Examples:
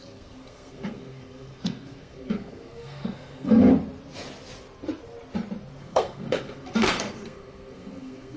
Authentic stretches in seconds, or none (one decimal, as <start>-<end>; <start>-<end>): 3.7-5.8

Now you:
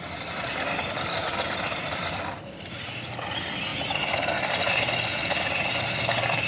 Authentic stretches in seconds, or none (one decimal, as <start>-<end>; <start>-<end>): 0.0-6.5

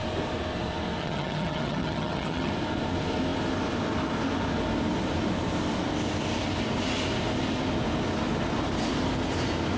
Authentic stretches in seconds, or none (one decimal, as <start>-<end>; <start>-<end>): 0.0-1.0; 2.5-9.8